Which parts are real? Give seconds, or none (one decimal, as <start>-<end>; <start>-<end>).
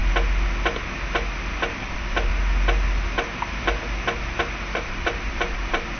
0.0-1.6; 2.3-4.8